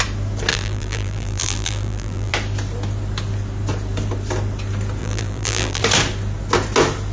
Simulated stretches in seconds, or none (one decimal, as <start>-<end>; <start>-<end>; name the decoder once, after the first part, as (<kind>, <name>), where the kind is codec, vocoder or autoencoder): 0.5-2.3 (vocoder, BigVGAN v2); 5.0-5.8